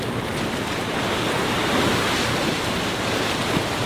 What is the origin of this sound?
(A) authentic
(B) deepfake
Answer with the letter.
A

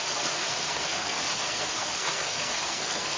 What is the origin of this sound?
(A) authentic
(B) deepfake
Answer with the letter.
B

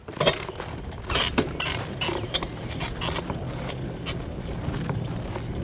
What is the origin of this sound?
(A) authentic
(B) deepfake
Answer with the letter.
A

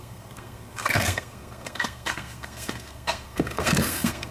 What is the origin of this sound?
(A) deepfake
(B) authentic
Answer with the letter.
A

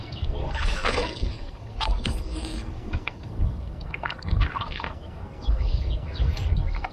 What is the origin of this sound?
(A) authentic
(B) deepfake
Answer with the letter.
B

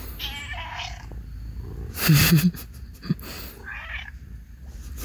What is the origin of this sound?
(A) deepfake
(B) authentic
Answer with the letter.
B